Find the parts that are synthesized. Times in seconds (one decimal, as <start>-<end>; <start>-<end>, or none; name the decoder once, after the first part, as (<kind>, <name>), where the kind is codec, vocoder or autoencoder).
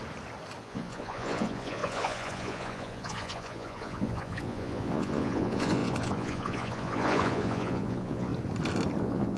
0.6-8.3 (vocoder, Vocos); 9.0-9.4